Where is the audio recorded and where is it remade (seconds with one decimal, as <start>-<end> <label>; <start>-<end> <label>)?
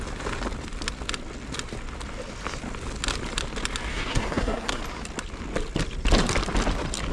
0.0-3.9 recorded; 3.9-4.8 remade; 4.8-7.1 recorded